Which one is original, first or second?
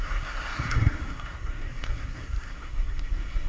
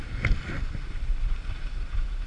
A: second